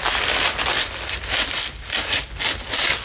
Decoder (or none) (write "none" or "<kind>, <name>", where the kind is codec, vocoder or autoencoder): none